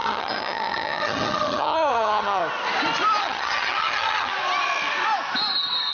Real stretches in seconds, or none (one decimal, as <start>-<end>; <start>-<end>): 2.4-3.2; 4.3-5.9

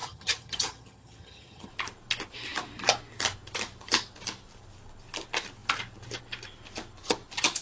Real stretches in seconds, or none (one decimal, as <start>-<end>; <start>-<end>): 1.7-7.6

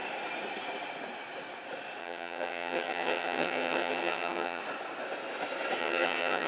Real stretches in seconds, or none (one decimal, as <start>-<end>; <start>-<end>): 0.0-2.0; 4.6-5.8

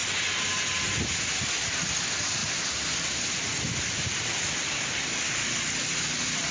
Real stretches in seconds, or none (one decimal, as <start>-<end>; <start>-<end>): 0.0-6.5